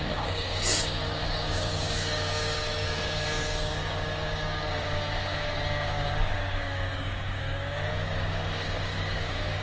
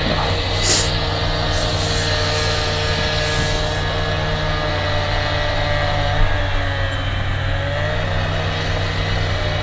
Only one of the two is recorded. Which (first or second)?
second